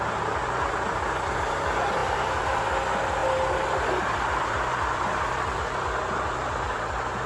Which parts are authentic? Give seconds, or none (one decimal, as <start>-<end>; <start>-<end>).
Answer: 0.0-2.0; 2.7-7.3